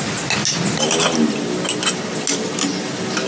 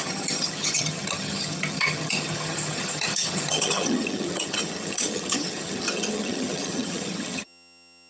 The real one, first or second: first